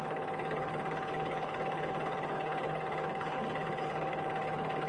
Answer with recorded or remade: remade